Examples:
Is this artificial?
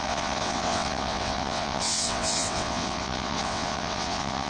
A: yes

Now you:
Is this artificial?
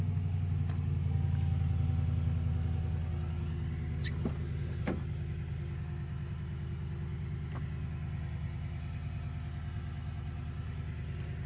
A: no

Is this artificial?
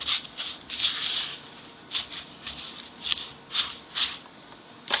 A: yes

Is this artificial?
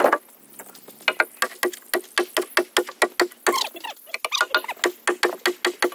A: no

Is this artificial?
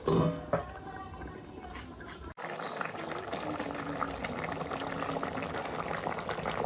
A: no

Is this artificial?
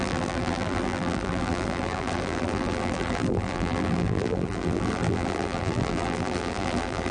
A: yes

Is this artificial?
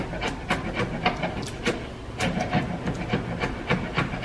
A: no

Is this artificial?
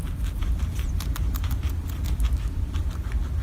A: no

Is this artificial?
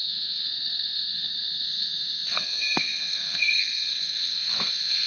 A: yes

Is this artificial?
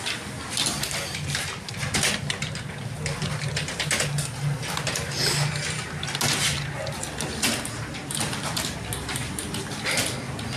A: no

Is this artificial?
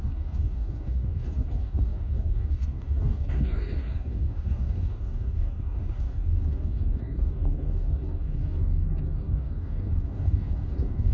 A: yes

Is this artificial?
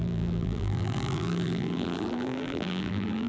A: yes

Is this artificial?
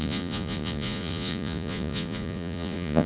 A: yes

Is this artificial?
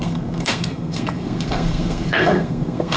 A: yes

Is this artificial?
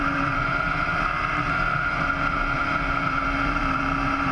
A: yes